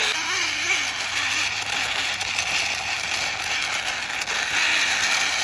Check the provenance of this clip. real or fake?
real